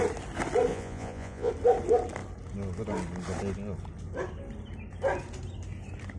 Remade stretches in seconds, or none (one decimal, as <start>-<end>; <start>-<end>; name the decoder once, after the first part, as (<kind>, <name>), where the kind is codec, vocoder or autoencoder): 0.7-1.5 (vocoder, Vocos)